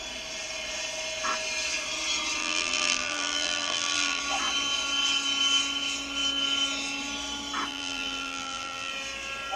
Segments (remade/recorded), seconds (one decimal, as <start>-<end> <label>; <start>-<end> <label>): 0.0-2.4 recorded; 2.4-4.2 remade; 4.2-7.7 recorded; 7.7-8.9 remade; 8.9-9.6 recorded